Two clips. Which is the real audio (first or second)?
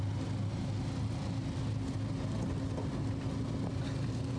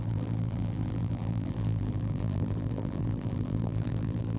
first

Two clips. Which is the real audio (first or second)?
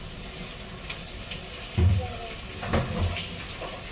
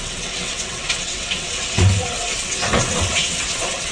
first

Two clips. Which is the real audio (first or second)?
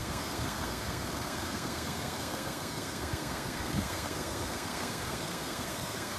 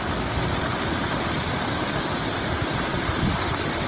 second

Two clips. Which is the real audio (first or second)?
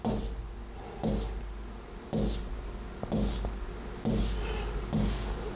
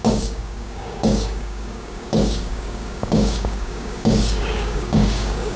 first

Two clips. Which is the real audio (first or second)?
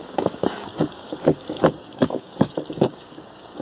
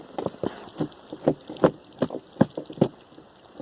second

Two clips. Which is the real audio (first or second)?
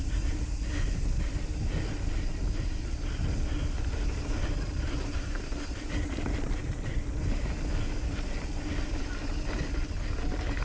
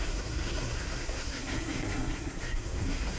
first